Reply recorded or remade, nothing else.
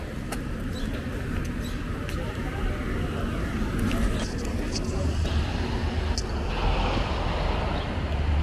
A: recorded